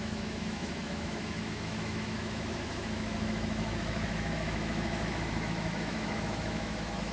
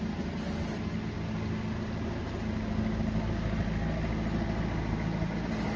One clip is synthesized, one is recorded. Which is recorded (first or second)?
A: second